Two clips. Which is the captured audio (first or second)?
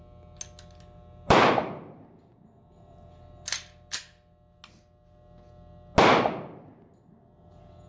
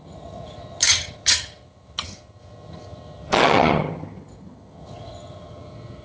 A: first